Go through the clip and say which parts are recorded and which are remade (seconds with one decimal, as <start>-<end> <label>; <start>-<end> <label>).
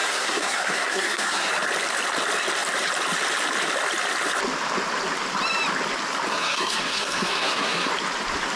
0.0-1.5 remade; 1.5-6.3 recorded; 6.3-7.9 remade; 7.9-8.6 recorded